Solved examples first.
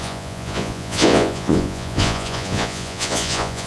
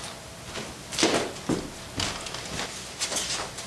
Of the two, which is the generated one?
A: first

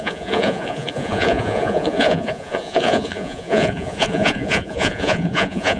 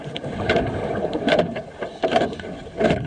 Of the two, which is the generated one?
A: first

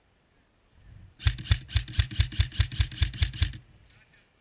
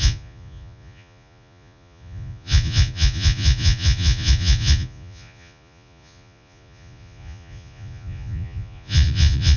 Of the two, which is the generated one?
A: second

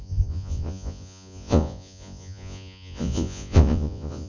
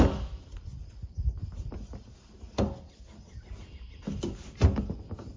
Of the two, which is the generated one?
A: first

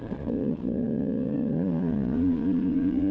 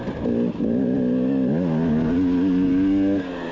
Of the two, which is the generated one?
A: first